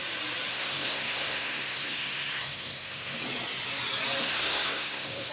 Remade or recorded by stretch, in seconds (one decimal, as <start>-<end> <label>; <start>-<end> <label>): 0.0-0.5 recorded; 0.5-3.2 remade; 3.2-4.2 recorded; 4.2-5.3 remade